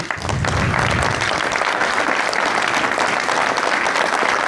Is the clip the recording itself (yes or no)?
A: yes